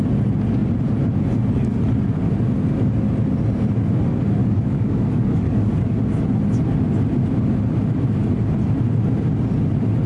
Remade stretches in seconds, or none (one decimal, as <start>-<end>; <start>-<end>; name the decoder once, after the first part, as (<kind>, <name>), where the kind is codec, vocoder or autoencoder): 4.4-6.0 (codec, DAC)